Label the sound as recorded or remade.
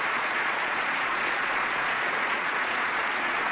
remade